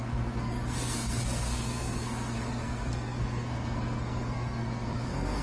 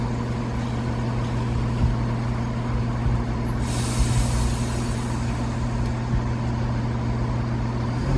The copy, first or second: first